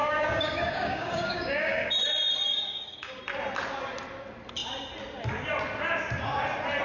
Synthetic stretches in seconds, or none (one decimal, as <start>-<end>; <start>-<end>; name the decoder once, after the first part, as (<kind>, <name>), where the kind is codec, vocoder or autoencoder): 0.0-1.9 (codec, DAC); 2.5-3.2